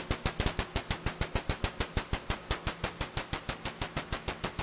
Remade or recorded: recorded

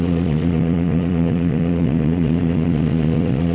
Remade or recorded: remade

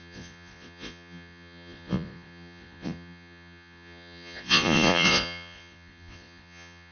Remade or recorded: remade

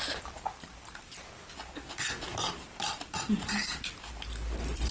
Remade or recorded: recorded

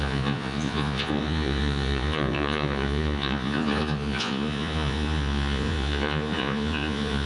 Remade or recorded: remade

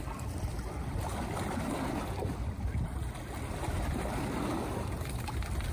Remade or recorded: recorded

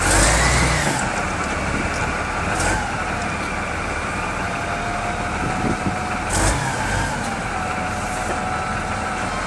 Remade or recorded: recorded